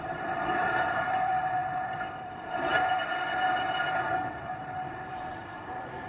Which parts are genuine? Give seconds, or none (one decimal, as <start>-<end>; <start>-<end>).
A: 2.7-5.3